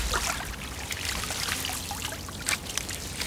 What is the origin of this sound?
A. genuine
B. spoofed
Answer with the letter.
A